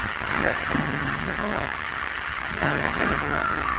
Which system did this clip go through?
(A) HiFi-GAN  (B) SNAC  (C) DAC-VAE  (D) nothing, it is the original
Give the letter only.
A